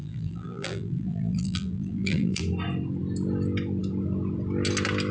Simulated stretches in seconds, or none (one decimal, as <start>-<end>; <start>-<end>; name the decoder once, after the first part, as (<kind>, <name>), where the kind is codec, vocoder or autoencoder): 0.0-2.4 (vocoder, BigVGAN v2)